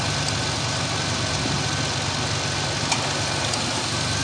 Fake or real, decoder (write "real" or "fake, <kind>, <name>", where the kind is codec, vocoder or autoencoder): real